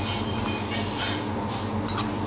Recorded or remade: recorded